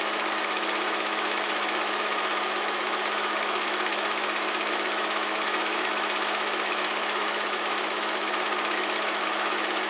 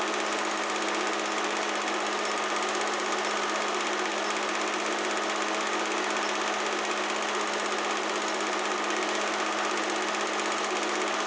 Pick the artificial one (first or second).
first